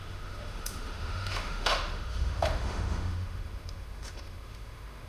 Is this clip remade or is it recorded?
remade